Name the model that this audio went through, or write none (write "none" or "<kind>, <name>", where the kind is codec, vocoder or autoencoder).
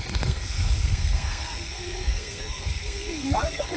codec, SNAC